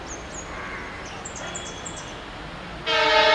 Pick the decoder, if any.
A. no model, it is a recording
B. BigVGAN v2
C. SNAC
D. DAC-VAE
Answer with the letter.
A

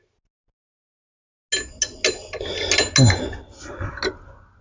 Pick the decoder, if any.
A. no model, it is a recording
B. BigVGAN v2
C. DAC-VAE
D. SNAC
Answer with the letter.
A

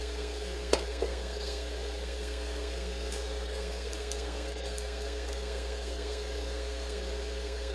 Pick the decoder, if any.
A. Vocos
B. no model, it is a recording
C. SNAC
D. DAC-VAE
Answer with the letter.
C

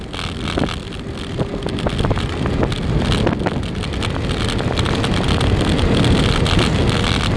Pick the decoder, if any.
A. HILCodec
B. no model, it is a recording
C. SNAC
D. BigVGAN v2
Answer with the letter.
B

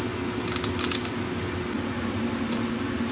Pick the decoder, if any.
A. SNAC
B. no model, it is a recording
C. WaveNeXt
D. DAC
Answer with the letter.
B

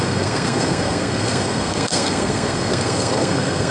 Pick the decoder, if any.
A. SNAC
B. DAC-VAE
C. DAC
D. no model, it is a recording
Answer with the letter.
A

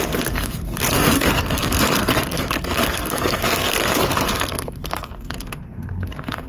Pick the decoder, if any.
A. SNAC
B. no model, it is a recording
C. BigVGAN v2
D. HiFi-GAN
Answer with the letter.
A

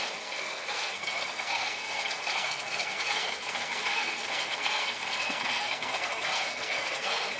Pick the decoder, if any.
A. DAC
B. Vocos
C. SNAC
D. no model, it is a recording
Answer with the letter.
C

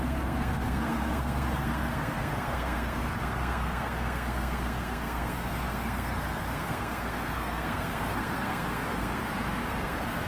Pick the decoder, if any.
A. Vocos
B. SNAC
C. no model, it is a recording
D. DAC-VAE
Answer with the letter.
B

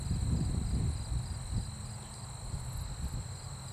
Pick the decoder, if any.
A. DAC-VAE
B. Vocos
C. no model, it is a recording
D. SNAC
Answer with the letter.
C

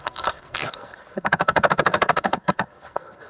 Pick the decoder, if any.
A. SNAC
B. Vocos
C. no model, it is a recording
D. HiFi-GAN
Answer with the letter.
A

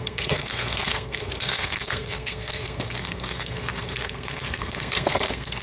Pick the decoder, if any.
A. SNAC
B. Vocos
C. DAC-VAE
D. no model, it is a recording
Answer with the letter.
A